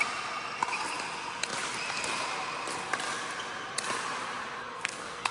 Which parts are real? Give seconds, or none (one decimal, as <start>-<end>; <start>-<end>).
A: 0.0-4.6